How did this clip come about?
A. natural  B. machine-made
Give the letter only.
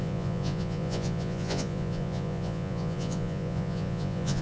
B